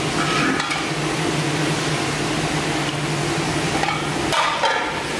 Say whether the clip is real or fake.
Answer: real